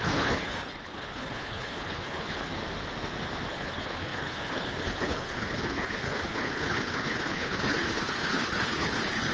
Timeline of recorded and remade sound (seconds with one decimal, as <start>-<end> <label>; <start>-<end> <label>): 0.0-2.5 remade; 2.5-3.5 recorded; 3.5-9.3 remade